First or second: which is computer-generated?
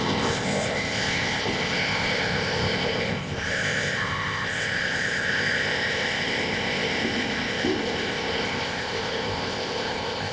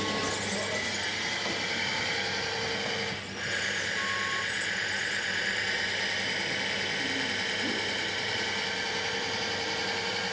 first